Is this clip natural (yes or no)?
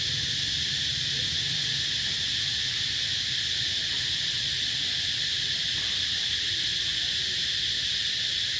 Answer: yes